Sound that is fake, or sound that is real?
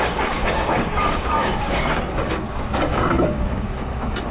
fake